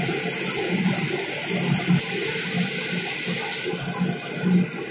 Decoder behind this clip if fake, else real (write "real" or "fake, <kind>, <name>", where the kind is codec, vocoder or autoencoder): real